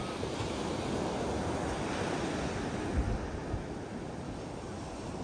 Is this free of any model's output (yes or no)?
yes